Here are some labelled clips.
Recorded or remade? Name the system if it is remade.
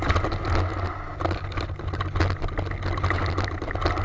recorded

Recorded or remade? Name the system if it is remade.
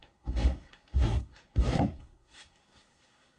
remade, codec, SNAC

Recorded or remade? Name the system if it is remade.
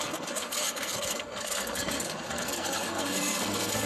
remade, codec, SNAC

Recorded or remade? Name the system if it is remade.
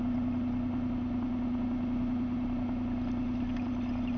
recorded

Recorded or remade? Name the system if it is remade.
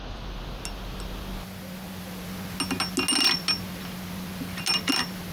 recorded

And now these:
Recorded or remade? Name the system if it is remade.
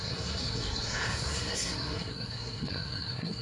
remade, codec, SNAC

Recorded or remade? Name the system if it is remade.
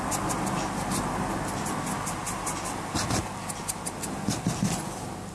recorded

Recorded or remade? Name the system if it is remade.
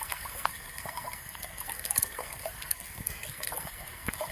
remade, codec, SNAC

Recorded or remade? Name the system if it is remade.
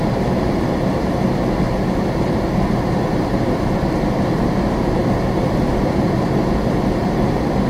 recorded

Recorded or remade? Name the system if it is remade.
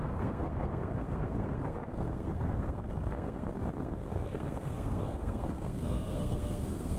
remade, codec, SNAC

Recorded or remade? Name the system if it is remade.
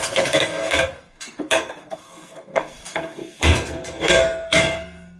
remade, codec, SNAC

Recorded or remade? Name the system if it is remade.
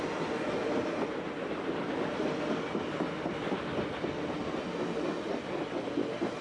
recorded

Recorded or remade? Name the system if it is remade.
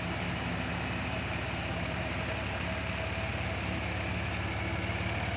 recorded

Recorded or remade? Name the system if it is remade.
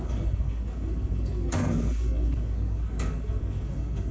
remade, codec, SNAC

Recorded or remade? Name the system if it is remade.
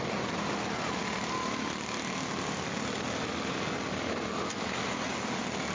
recorded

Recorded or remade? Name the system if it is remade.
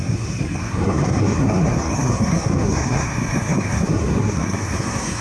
remade, codec, SNAC